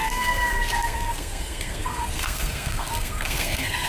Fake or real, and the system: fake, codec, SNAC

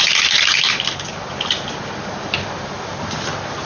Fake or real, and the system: real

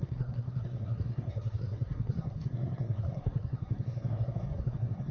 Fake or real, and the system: fake, codec, SNAC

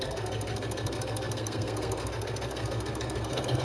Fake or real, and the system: fake, codec, SNAC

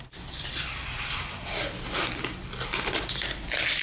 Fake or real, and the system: real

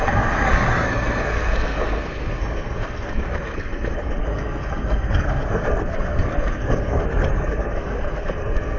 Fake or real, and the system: fake, codec, SNAC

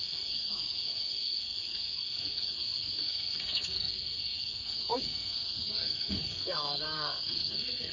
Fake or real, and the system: fake, codec, SNAC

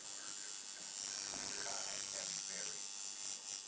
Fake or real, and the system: real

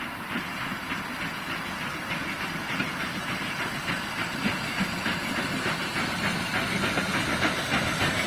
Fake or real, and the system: real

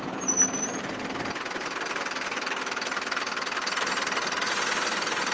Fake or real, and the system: real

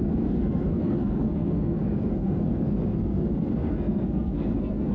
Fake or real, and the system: fake, codec, SNAC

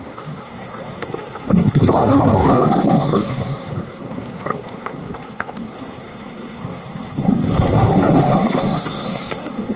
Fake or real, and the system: fake, codec, SNAC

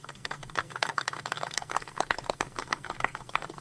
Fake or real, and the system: fake, codec, SNAC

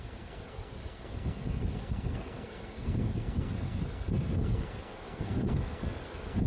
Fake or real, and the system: fake, codec, SNAC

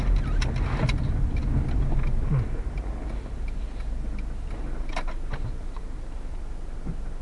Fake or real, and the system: real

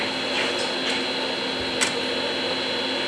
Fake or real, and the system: real